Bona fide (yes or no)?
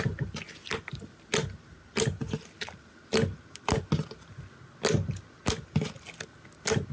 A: yes